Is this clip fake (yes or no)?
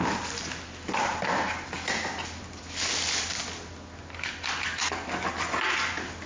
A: no